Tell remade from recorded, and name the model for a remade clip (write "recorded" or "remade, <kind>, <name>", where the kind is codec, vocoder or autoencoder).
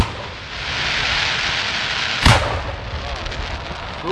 recorded